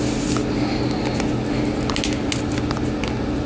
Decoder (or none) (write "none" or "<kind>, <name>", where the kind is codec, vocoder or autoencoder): none